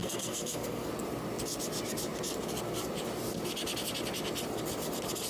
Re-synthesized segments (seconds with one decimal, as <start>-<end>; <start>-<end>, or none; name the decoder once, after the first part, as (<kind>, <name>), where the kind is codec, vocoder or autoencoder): 0.0-0.9 (codec, SNAC)

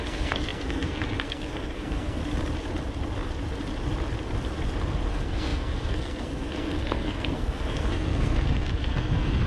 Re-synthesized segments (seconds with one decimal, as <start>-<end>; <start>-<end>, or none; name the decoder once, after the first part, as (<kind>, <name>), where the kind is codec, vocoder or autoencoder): 0.0-2.2 (codec, SNAC); 5.1-9.5

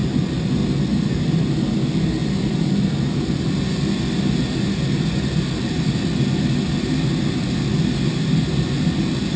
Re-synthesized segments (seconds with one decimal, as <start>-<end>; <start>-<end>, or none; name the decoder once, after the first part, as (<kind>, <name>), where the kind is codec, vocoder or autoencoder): none

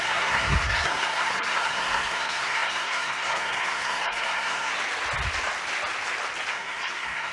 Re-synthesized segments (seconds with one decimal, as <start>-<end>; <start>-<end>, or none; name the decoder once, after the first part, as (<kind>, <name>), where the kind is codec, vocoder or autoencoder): 0.0-4.7 (codec, SNAC); 6.5-7.3

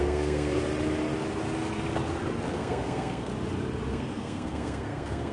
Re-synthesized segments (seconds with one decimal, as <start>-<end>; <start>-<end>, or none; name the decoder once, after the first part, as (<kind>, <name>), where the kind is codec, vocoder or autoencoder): 0.0-0.6 (codec, SNAC); 2.5-3.3; 3.9-5.3

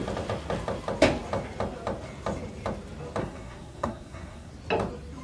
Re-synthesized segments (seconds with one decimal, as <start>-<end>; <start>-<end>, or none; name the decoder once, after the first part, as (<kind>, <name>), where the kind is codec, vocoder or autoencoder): 3.2-4.5 (codec, SNAC)

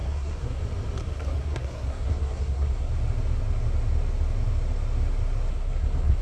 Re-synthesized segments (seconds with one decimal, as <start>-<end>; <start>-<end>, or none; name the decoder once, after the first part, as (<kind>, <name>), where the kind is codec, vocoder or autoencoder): 0.0-0.6 (codec, SNAC); 1.0-2.9; 5.5-6.2